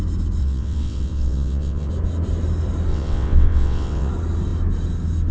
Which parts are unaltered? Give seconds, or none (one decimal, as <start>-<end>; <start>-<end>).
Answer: 0.0-0.4; 1.9-2.9; 4.1-5.3